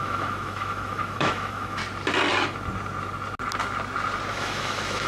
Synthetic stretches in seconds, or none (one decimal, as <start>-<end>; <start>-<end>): 0.0-1.8; 4.3-5.1